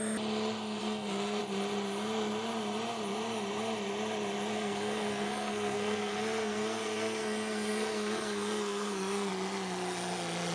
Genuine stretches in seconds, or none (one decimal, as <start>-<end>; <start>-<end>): 0.0-0.8; 1.4-4.5; 9.3-10.5